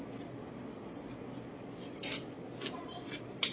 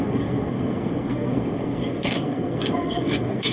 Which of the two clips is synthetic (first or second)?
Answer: second